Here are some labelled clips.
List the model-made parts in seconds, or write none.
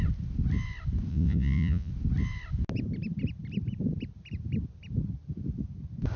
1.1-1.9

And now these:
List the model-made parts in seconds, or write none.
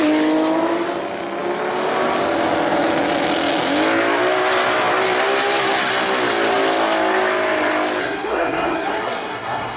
8.0-9.8